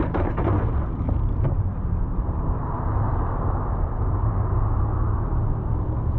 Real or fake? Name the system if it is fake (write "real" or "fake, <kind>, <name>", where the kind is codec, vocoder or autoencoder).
fake, vocoder, BigVGAN v2